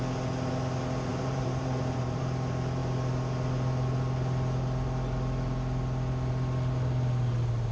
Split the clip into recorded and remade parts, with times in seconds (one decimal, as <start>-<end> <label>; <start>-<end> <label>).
0.0-1.1 recorded; 1.1-2.2 remade; 2.2-7.7 recorded